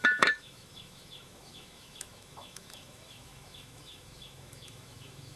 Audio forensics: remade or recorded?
remade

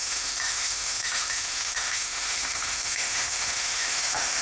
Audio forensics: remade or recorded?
remade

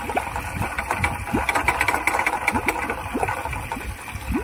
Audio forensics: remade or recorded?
recorded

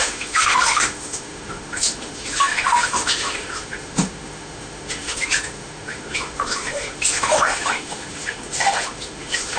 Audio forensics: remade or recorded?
remade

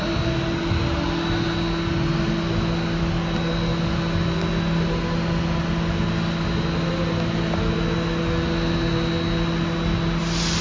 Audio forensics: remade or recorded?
recorded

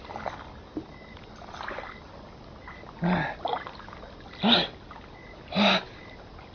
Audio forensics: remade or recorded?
recorded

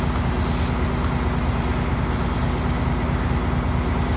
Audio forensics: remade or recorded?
recorded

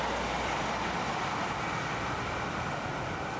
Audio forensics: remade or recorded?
recorded